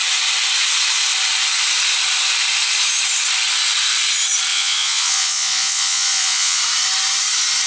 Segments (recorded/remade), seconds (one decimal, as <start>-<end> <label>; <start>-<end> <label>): 0.0-4.5 recorded; 4.5-6.6 remade; 6.6-7.7 recorded